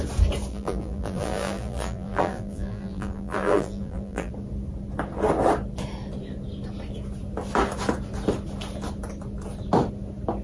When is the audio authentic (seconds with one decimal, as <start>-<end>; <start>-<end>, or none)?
0.0-0.5; 4.3-10.4